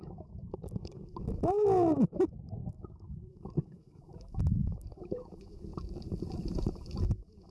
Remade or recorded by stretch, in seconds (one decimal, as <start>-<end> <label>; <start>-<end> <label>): 0.0-5.7 remade; 5.7-6.7 recorded; 6.7-7.5 remade